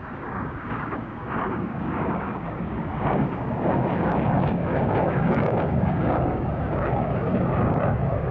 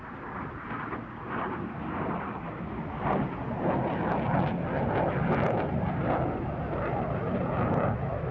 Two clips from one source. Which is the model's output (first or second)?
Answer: first